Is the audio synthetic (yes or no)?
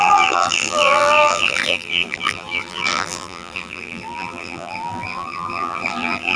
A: yes